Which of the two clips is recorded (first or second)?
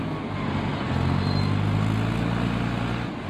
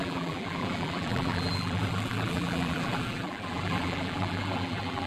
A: first